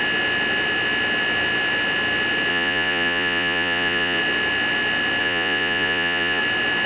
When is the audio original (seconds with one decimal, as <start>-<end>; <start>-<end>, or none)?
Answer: 0.0-2.5; 4.2-5.2; 6.4-6.9